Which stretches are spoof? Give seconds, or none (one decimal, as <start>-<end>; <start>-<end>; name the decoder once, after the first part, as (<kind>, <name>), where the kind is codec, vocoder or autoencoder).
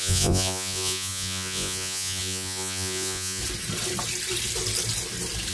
0.0-3.4 (vocoder, Vocos)